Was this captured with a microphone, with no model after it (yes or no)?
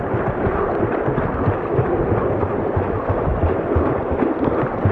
yes